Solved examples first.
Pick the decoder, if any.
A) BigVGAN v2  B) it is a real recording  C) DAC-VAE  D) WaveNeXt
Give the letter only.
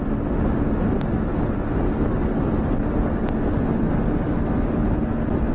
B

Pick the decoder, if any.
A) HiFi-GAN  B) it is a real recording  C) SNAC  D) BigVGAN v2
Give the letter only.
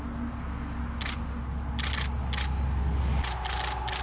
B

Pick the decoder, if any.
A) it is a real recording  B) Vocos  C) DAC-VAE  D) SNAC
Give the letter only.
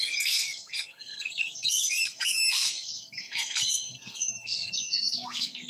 D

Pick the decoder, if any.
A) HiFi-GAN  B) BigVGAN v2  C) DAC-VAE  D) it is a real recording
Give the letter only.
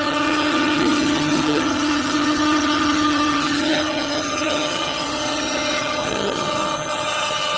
A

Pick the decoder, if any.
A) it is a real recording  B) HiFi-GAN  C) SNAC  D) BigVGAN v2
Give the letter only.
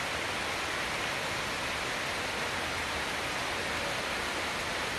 A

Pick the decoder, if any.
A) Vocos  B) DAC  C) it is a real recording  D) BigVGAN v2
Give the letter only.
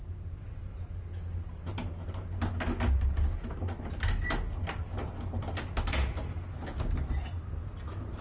C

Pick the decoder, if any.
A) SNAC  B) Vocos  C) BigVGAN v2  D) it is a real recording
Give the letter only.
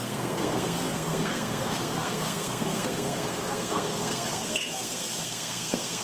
A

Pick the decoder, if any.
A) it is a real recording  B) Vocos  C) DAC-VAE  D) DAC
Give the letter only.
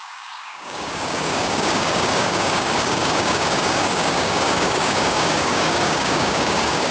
D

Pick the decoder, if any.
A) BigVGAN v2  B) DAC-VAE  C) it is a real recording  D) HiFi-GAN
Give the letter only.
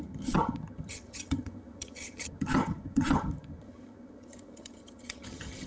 D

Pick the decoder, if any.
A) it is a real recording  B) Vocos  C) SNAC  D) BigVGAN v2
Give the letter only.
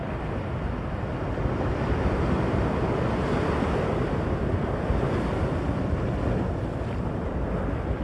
A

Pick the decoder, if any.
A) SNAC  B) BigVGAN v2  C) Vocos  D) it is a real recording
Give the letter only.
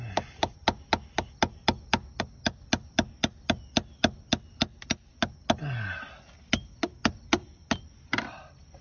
D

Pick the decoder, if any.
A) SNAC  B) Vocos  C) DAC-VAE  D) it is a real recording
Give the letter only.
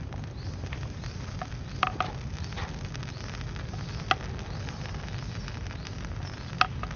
D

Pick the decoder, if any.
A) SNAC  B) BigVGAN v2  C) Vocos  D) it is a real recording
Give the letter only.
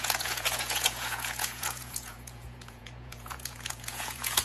C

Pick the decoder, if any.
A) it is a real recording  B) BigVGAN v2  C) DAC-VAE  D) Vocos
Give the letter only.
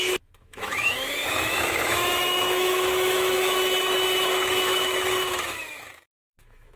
C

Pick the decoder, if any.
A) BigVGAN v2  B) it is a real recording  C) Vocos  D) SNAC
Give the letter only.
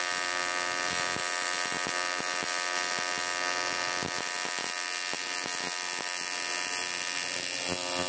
B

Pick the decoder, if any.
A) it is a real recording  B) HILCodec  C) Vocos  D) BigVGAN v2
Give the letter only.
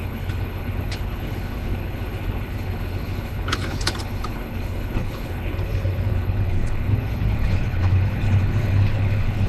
B